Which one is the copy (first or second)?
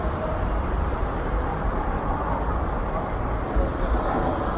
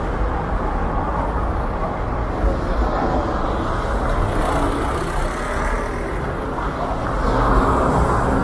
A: first